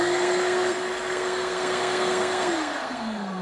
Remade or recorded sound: remade